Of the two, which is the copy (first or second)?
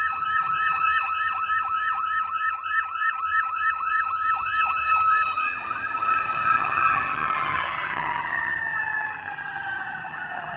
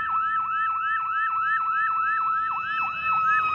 first